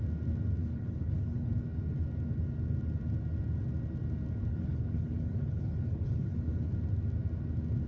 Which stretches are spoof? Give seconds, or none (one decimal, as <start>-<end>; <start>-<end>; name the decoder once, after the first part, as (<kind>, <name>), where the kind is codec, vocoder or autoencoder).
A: 0.6-1.5 (codec, HILCodec); 4.5-6.7